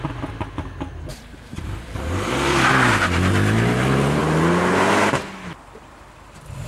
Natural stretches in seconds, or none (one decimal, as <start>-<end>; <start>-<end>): 0.0-1.1; 2.7-6.7